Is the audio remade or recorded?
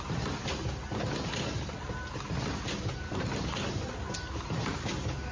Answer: recorded